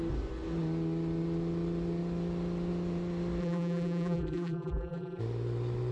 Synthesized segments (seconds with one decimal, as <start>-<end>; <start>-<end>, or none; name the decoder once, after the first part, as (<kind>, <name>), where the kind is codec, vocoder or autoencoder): 3.4-5.2 (vocoder, BigVGAN v2)